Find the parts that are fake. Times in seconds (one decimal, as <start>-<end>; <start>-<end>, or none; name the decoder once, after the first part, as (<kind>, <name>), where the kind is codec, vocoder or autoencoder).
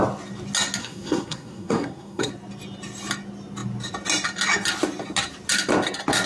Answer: 0.8-2.3 (codec, SNAC)